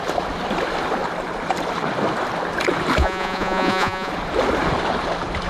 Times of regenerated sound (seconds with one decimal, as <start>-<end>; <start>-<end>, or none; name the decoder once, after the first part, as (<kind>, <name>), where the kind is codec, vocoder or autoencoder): 3.0-4.1 (vocoder, Vocos)